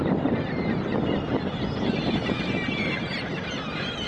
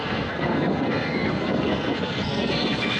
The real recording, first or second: first